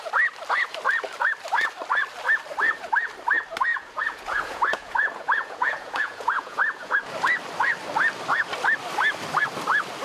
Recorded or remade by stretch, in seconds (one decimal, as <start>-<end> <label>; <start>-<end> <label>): 0.0-3.7 recorded; 3.7-7.0 remade; 7.0-10.0 recorded